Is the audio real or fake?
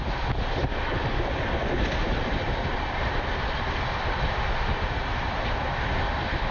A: fake